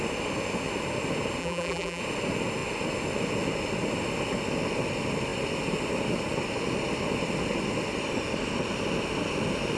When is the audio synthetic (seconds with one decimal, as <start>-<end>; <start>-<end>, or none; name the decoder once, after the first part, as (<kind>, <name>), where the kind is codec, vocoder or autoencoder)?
1.4-2.0 (vocoder, BigVGAN v2)